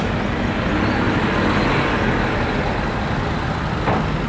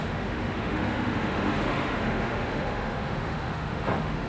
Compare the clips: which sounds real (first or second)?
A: first